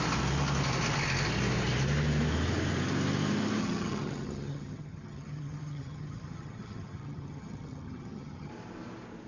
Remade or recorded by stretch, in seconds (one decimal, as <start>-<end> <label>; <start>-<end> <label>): 0.0-3.6 recorded; 3.6-8.5 remade; 8.5-9.3 recorded